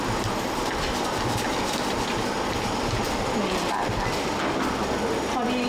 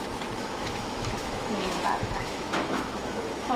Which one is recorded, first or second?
first